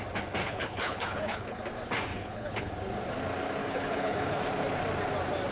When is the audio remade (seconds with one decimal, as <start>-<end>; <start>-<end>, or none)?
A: 0.4-1.6; 2.1-2.7; 3.6-4.4